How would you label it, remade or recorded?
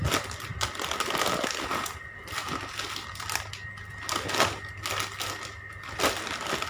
recorded